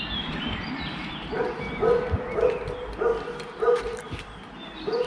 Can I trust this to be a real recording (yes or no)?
yes